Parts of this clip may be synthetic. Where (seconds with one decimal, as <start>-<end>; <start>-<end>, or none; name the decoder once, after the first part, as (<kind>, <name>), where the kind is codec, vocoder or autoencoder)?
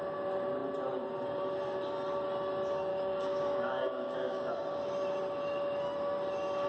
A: 2.9-4.5 (codec, DAC)